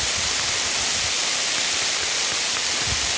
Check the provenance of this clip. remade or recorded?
recorded